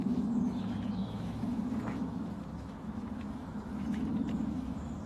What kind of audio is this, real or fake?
fake